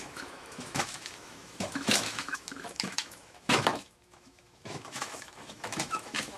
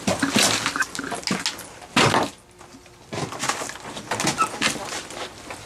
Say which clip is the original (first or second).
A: second